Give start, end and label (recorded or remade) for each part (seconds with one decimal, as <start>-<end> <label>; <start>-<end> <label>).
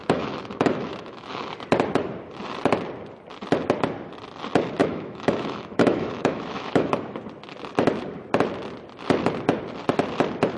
0.0-1.5 remade; 1.5-4.8 recorded; 4.8-6.9 remade; 6.9-10.6 recorded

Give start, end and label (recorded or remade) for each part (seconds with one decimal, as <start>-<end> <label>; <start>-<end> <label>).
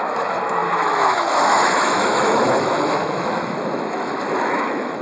0.0-5.0 remade